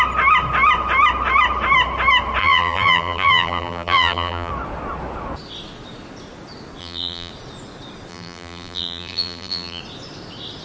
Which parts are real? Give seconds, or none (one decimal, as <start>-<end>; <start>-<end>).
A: 0.0-2.4; 4.5-6.8; 7.3-8.1; 9.8-10.6